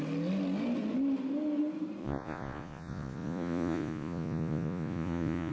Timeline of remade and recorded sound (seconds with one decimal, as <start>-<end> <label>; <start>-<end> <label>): 0.0-2.0 recorded; 2.0-5.5 remade